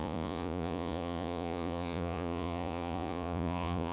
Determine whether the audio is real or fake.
fake